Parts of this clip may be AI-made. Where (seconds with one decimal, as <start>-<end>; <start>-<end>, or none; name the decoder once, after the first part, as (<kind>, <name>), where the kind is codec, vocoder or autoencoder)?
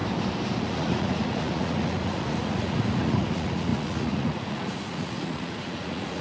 0.6-6.2 (vocoder, Vocos)